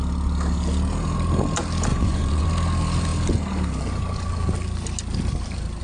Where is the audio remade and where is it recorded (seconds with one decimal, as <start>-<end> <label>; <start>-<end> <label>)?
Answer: 0.0-1.9 recorded; 1.9-2.5 remade; 2.5-5.8 recorded